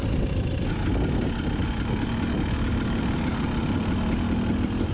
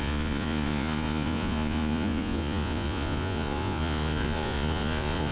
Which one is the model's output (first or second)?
second